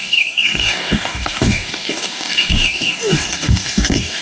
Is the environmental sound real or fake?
fake